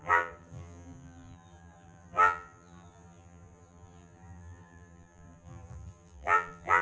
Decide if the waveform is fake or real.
fake